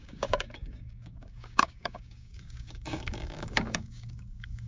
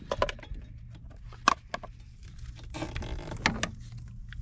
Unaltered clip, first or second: second